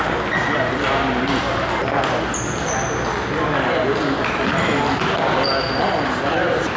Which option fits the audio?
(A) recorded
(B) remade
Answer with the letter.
A